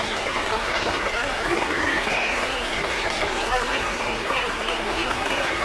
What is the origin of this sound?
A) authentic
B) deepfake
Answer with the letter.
B